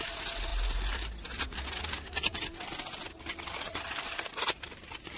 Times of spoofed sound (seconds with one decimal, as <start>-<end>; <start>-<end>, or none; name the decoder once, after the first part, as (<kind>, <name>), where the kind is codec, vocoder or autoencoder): 0.0-5.2 (vocoder, BigVGAN v2)